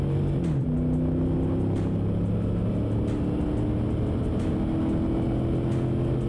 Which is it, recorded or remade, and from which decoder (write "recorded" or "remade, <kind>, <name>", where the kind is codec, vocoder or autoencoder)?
recorded